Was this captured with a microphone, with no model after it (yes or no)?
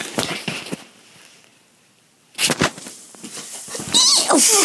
yes